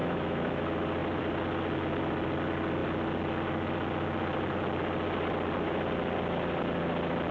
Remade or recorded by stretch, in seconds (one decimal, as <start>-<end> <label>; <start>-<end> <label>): 0.0-0.6 remade; 0.6-7.3 recorded